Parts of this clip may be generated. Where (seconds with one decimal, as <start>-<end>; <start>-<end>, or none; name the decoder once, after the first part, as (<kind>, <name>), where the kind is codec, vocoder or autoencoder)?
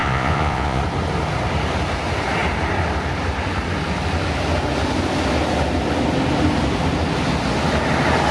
0.0-0.8 (vocoder, Vocos)